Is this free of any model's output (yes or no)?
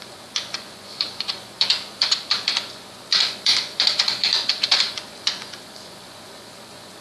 no